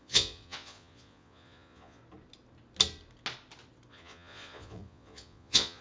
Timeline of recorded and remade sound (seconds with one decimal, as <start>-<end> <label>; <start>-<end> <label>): 0.0-2.0 remade; 2.0-3.9 recorded; 3.9-5.8 remade